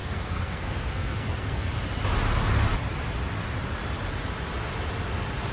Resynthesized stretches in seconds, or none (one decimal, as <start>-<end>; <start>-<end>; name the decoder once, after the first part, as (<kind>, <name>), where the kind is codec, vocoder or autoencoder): 0.0-1.7 (codec, SNAC)